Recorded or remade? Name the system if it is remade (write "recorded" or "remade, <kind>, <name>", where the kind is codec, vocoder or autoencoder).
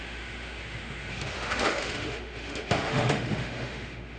remade, autoencoder, DAC-VAE